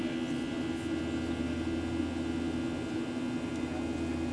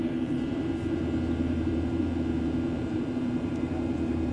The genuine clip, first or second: first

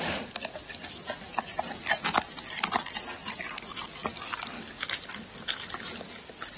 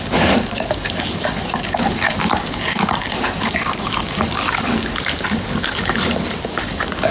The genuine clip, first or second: first